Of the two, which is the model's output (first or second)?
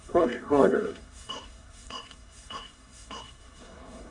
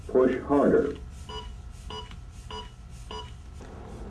first